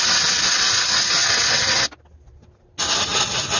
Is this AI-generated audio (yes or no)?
no